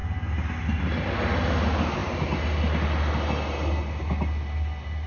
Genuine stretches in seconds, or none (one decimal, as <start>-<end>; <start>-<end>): 0.0-5.1